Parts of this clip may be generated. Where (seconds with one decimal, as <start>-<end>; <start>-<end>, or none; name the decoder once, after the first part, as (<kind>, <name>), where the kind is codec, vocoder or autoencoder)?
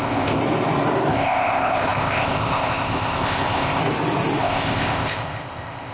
0.0-0.4 (codec, ZipCodec); 1.1-3.8; 4.4-5.9